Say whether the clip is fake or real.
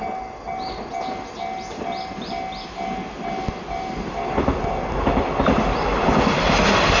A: real